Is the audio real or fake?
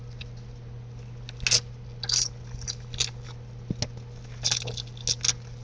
real